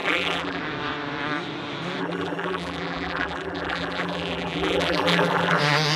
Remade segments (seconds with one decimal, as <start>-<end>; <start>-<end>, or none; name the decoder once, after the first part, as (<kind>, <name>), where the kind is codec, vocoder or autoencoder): 0.0-0.6 (vocoder, BigVGAN v2); 2.0-5.6